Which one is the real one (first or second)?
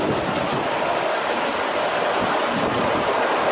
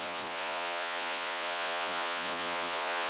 first